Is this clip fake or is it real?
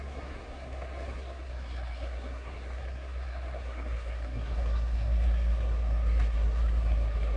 fake